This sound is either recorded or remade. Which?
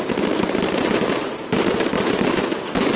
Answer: remade